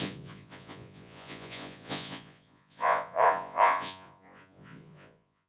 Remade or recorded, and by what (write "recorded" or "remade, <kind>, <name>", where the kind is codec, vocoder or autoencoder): remade, vocoder, Vocos